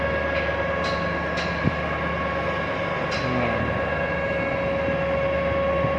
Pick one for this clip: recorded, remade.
recorded